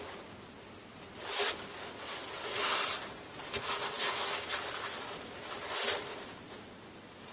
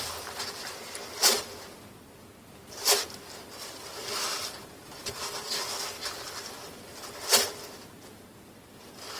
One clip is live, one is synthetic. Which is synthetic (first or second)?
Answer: second